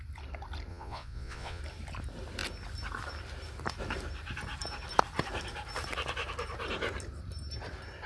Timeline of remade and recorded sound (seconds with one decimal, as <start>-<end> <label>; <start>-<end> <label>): 0.0-0.7 recorded; 0.7-1.6 remade; 1.6-8.1 recorded